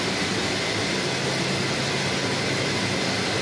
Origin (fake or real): real